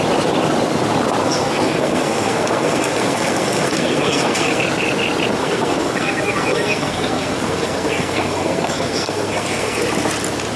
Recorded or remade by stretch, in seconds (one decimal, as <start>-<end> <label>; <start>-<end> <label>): 0.0-1.2 recorded; 1.2-4.6 remade; 4.6-5.4 recorded; 5.4-9.8 remade; 9.8-10.6 recorded